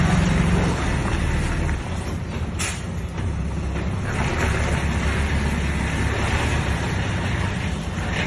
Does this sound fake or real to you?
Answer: real